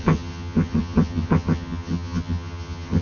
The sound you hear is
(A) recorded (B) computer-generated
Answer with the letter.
B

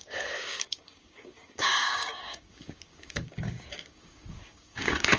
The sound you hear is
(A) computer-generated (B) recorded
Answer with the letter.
A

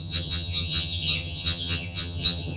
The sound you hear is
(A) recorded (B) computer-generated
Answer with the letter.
B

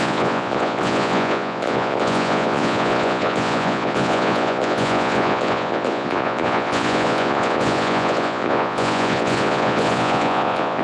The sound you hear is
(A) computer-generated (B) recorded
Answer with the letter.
A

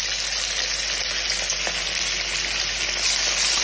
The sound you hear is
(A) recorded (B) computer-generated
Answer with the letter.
A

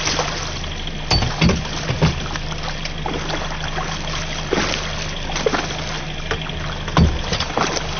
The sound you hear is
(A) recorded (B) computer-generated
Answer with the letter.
A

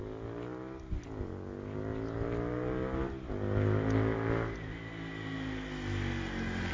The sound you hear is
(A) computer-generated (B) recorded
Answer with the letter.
B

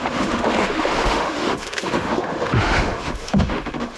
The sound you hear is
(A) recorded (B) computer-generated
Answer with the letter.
B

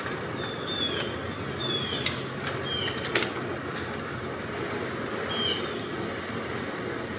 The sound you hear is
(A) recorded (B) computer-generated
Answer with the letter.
A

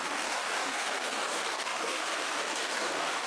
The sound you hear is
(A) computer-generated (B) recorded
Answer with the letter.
A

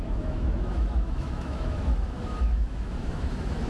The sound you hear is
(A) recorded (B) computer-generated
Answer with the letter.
B